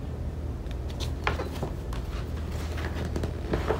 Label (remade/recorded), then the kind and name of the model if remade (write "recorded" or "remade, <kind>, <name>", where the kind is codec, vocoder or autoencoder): recorded